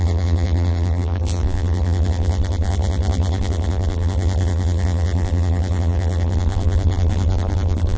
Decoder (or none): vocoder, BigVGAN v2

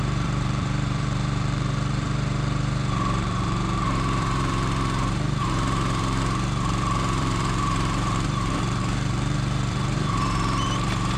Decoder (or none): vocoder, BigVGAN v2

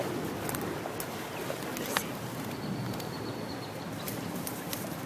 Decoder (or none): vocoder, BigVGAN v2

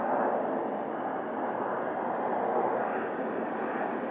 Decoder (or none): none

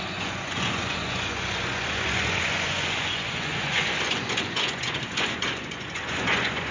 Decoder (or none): vocoder, Vocos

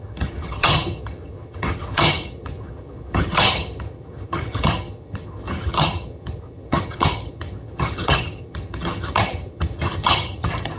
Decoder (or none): vocoder, HiFi-GAN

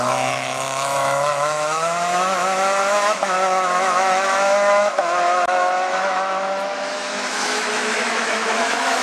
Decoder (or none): autoencoder, DAC-VAE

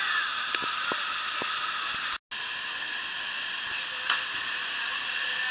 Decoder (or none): none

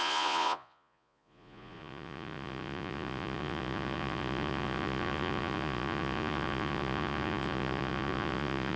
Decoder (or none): vocoder, Vocos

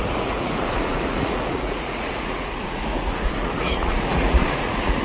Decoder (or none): vocoder, Vocos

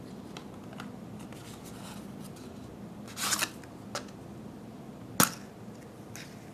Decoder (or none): none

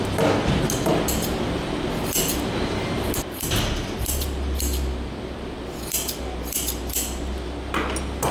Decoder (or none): none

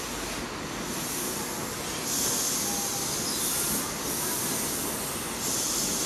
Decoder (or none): none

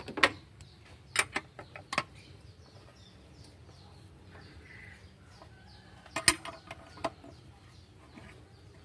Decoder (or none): none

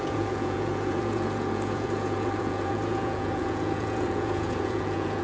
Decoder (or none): vocoder, Vocos